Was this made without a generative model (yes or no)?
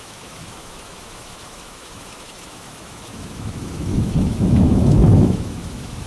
no